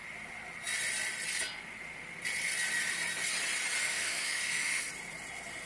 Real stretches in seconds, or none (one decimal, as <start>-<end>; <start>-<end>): 0.0-3.8; 4.9-5.7